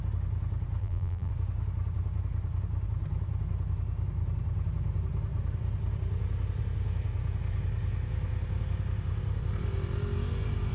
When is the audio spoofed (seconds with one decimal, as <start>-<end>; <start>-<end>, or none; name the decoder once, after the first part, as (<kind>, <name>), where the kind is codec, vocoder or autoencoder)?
0.8-1.3 (vocoder, BigVGAN v2)